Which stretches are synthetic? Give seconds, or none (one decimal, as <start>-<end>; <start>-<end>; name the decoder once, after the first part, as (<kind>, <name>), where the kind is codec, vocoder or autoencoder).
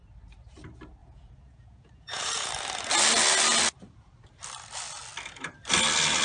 1.0-2.5 (vocoder, Vocos)